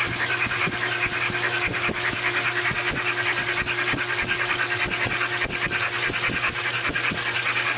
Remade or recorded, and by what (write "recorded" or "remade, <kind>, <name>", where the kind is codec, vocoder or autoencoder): recorded